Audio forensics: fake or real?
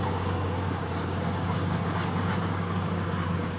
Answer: fake